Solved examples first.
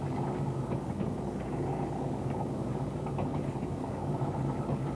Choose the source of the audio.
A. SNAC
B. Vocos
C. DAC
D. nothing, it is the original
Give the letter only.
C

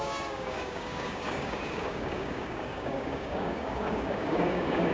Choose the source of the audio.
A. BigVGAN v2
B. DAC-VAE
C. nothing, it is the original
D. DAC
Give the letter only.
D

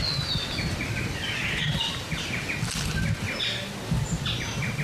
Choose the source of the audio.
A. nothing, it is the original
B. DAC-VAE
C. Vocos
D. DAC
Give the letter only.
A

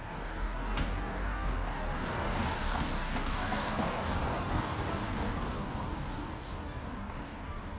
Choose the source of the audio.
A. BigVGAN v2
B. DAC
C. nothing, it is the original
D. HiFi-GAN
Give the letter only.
B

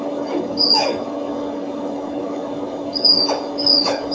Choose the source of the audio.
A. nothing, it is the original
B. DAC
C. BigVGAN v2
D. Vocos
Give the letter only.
B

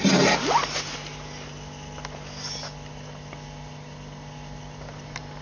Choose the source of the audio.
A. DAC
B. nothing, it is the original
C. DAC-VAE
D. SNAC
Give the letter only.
B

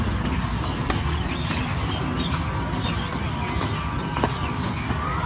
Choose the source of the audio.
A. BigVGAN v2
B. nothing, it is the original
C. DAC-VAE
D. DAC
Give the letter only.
B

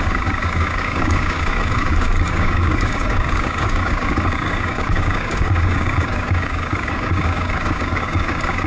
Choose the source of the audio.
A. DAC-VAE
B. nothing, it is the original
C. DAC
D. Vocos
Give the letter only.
C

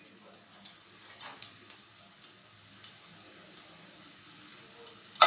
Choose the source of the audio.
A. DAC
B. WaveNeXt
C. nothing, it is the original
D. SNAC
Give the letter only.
C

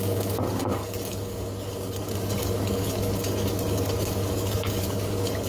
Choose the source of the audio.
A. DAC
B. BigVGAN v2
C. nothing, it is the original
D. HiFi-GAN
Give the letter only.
A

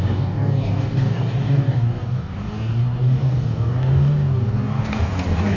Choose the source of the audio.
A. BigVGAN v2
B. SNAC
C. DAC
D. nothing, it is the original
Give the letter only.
C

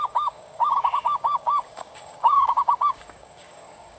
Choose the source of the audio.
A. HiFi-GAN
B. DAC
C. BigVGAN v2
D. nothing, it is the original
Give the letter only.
B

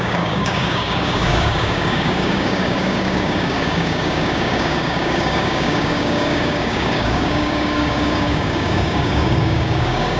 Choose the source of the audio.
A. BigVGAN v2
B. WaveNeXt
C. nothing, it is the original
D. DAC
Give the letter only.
D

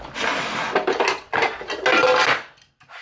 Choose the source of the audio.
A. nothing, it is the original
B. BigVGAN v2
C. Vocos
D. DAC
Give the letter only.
A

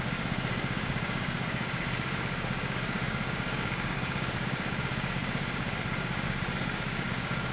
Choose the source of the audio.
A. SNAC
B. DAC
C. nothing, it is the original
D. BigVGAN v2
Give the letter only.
B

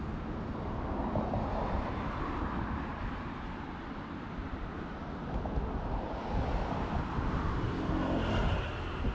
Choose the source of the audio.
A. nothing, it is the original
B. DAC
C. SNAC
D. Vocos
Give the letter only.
A